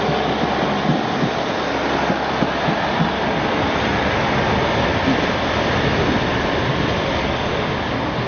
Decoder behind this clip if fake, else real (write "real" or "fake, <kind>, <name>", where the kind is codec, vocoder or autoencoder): real